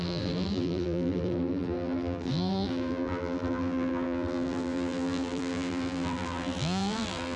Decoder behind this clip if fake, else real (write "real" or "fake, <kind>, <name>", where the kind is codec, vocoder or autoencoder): fake, vocoder, BigVGAN v2